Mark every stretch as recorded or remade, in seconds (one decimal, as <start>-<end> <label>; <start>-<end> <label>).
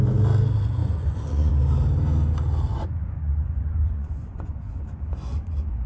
0.0-0.8 recorded; 0.8-1.5 remade; 1.5-2.7 recorded; 2.7-5.9 remade